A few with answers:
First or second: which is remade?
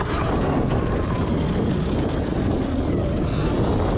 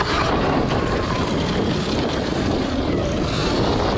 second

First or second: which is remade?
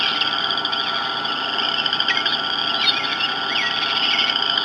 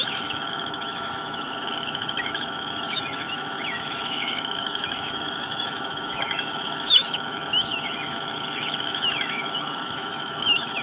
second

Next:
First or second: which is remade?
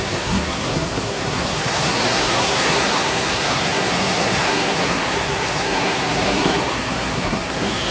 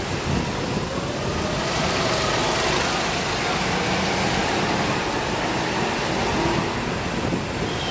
first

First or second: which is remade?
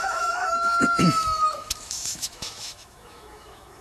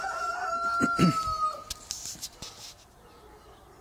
first